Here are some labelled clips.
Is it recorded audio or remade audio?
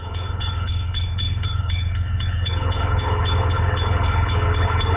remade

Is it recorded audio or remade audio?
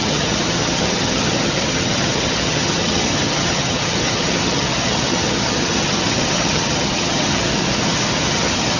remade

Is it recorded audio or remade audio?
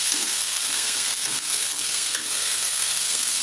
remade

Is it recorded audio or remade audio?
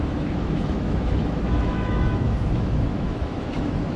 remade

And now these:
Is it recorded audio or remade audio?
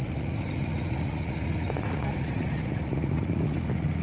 remade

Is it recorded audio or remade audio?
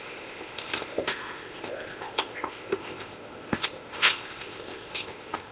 remade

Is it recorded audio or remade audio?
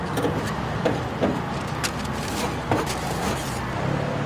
recorded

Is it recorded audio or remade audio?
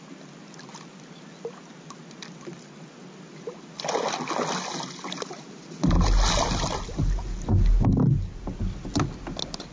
recorded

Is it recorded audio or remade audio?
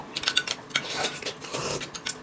recorded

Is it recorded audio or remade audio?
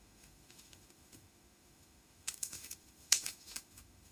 remade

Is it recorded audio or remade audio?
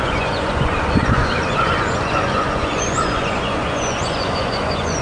remade